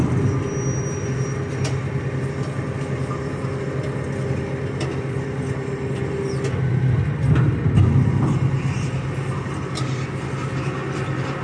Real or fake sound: real